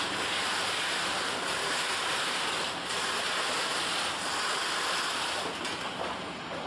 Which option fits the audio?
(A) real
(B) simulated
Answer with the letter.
A